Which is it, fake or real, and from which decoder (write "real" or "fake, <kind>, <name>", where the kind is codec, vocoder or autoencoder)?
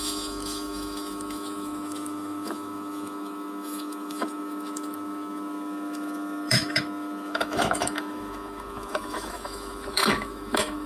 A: fake, autoencoder, DAC-VAE